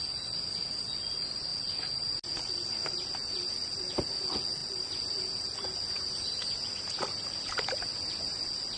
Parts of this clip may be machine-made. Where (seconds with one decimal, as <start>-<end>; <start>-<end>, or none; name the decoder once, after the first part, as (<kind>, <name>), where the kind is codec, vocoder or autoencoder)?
none